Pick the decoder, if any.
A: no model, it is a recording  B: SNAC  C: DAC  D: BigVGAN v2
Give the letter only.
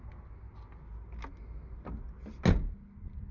A